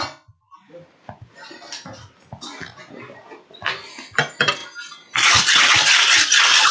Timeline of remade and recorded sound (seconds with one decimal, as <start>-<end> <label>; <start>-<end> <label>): 0.0-6.7 recorded